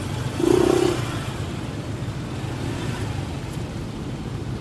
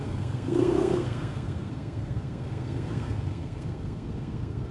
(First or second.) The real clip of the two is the first